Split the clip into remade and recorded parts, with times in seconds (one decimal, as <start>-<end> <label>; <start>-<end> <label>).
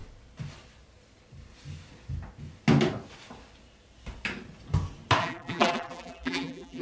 0.0-5.2 recorded; 5.2-6.8 remade